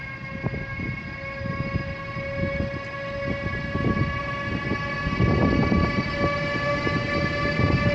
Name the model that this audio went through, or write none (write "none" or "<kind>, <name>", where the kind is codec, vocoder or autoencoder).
none